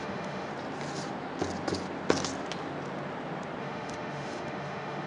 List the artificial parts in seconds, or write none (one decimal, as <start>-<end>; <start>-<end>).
0.0-0.5; 3.6-5.1